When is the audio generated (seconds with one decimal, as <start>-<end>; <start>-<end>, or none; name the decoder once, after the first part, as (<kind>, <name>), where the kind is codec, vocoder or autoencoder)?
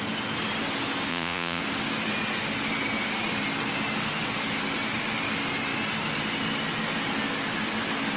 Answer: 1.1-1.6 (vocoder, Vocos)